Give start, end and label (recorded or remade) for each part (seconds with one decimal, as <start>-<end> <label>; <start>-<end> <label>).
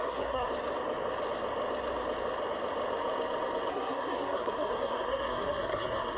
0.0-0.5 remade; 0.5-3.7 recorded; 3.7-6.2 remade